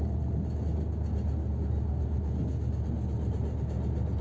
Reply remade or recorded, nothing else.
recorded